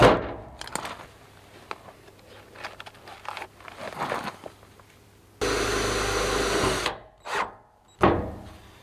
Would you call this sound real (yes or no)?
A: yes